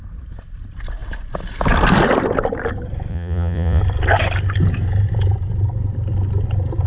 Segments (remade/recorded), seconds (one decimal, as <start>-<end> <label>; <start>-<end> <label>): 0.0-3.1 recorded; 3.1-3.8 remade; 3.8-6.9 recorded